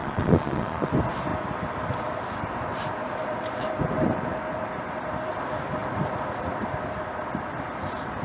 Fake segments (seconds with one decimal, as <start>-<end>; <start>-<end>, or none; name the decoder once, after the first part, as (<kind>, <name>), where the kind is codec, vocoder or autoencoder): 0.0-0.9 (vocoder, Vocos)